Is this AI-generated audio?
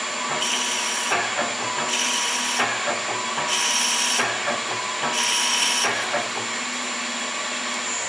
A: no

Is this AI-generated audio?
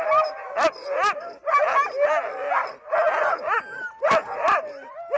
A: no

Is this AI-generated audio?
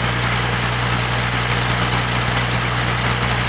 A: no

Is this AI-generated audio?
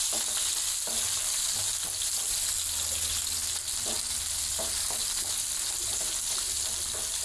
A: no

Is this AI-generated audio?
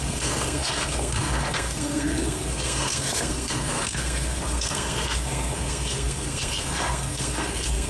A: yes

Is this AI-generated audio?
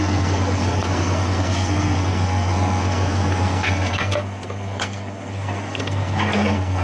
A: yes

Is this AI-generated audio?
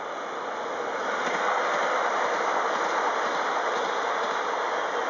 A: no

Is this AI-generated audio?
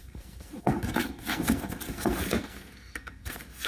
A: yes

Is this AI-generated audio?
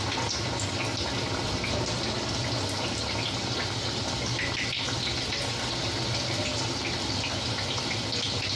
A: no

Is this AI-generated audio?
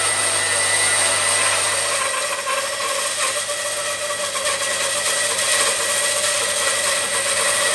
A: no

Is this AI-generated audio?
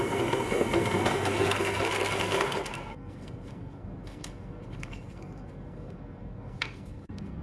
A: yes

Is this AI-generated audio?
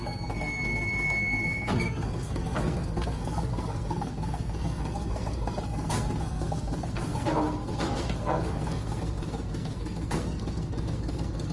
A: yes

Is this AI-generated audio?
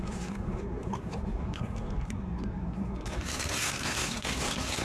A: yes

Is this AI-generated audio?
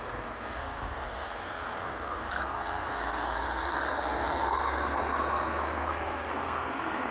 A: yes